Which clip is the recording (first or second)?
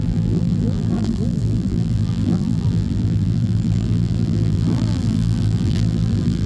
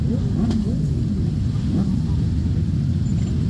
second